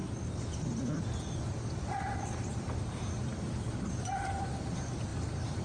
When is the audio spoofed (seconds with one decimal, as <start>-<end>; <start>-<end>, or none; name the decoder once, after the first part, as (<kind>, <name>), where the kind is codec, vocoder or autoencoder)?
0.7-5.6 (vocoder, BigVGAN v2)

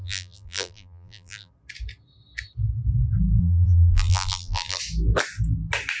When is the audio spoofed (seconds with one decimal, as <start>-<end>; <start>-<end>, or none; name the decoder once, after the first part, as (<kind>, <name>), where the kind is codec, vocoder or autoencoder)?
0.0-1.5 (vocoder, BigVGAN v2); 3.4-4.8